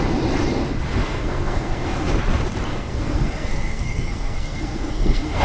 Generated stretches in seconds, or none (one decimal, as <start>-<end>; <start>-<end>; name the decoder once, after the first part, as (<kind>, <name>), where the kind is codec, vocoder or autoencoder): 1.0-2.1 (codec, SNAC); 2.7-5.4